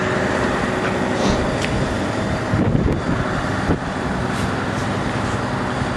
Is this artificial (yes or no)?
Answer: no